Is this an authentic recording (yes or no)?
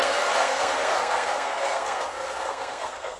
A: no